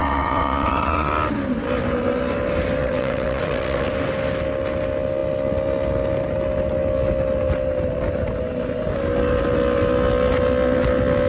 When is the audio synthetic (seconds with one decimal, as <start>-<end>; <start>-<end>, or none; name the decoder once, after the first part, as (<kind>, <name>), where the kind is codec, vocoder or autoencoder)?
0.0-1.1 (vocoder, WaveNeXt); 2.8-3.9

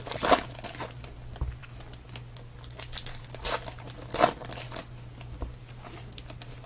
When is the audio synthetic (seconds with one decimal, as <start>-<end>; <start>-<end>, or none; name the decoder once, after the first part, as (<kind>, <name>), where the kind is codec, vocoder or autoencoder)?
none

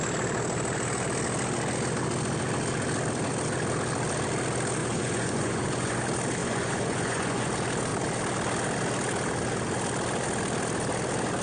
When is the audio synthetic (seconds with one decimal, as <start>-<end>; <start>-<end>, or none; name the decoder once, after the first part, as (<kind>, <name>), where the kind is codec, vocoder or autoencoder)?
4.8-6.0 (vocoder, Vocos); 6.4-7.5

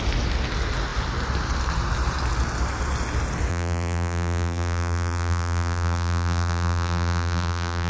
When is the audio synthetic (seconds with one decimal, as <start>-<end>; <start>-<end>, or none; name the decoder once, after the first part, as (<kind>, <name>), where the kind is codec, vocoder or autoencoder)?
3.5-7.9 (vocoder, BigVGAN v2)